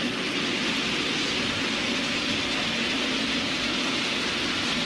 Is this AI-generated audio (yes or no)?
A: no